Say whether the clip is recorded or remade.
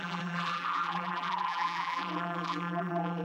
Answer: remade